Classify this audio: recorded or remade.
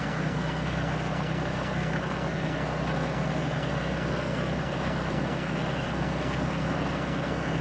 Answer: remade